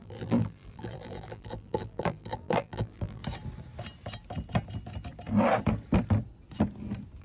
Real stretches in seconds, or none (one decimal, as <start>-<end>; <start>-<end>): 3.2-7.2